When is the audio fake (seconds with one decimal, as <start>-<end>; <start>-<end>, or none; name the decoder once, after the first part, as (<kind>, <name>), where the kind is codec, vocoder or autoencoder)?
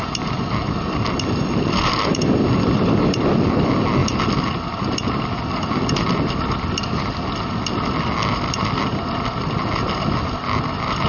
none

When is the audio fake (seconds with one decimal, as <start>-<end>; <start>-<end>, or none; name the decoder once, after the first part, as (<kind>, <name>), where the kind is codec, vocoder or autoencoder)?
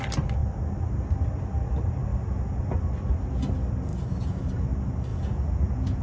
5.1-6.0 (vocoder, Vocos)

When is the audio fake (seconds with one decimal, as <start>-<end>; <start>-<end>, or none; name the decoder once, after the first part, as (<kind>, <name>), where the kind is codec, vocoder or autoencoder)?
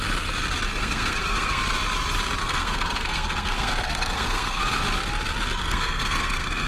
0.8-1.6 (codec, SNAC); 2.4-4.6; 5.6-6.7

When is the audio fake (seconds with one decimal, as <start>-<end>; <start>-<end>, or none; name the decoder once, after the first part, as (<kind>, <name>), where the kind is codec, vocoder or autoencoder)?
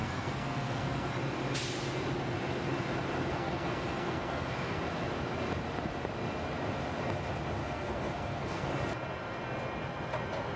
0.0-1.1 (codec, SNAC); 3.3-4.8; 7.6-8.7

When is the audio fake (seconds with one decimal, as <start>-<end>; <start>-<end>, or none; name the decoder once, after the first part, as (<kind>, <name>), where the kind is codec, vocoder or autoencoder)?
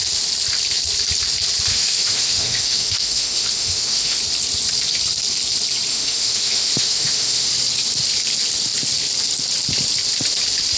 1.7-4.2 (autoencoder, DAC-VAE); 5.9-7.5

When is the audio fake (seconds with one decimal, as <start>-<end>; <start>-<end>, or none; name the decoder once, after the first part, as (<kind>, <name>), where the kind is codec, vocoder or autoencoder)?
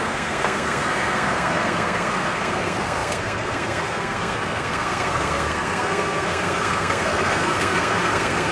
0.0-8.5 (codec, SNAC)